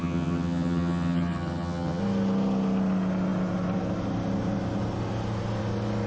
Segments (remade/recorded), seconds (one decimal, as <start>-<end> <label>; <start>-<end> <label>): 0.0-2.0 remade; 2.0-6.1 recorded